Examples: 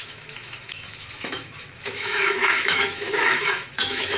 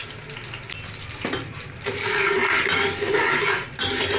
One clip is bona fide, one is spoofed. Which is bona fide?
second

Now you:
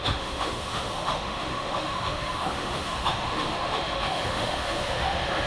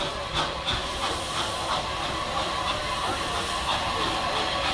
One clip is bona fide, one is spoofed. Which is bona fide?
second